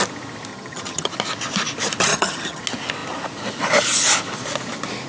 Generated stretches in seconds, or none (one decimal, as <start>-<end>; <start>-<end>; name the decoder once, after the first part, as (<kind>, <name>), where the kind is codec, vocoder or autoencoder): 0.5-1.1 (vocoder, HiFi-GAN); 2.1-2.6